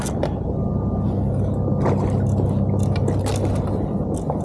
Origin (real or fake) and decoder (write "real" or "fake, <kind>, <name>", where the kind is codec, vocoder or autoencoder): real